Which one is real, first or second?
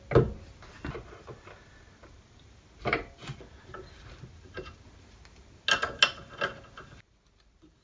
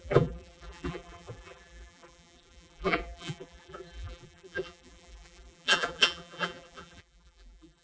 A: first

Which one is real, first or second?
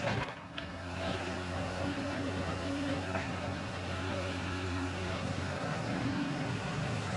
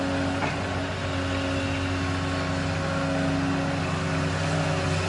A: second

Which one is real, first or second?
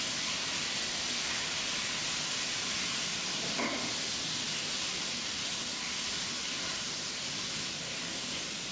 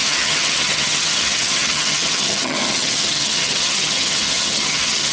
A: first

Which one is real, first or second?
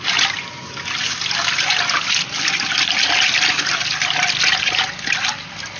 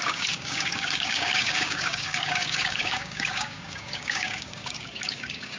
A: first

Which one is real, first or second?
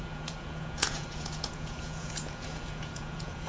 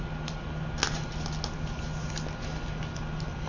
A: second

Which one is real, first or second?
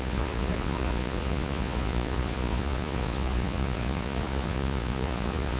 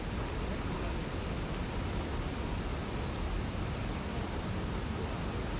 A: second